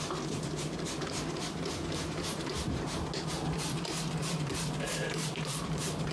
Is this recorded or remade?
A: remade